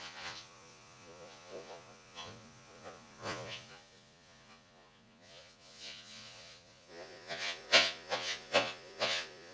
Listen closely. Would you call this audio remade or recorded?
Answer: remade